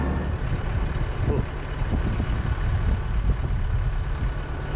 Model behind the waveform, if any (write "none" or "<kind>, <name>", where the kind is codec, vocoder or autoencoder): none